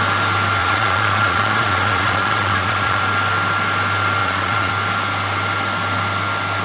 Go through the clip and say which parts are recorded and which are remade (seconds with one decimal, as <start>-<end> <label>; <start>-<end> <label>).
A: 0.0-0.6 recorded; 0.6-3.0 remade; 3.0-4.2 recorded; 4.2-4.7 remade; 4.7-6.6 recorded